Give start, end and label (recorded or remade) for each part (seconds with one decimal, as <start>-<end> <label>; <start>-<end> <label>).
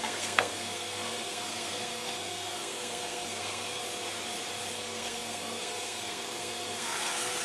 0.0-3.8 remade; 3.8-4.7 recorded; 4.7-7.4 remade